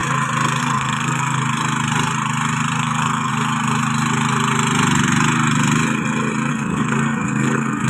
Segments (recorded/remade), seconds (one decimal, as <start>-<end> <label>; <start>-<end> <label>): 0.0-0.6 recorded; 0.6-1.4 remade; 1.4-2.8 recorded; 2.8-3.3 remade; 3.3-6.5 recorded; 6.5-7.9 remade